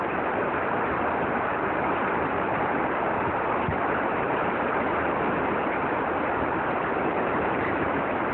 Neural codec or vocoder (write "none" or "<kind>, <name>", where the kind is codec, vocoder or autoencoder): none